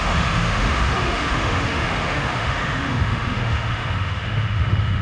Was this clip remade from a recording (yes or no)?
yes